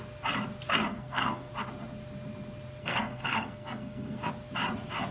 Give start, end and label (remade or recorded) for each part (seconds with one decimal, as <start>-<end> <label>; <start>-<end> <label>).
0.0-0.9 recorded; 0.9-1.5 remade; 1.5-2.8 recorded; 2.8-4.3 remade; 4.3-5.1 recorded